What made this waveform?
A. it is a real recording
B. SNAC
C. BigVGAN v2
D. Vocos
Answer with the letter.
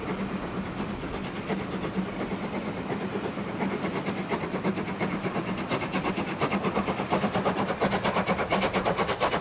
A